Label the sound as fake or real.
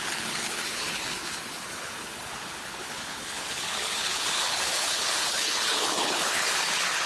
fake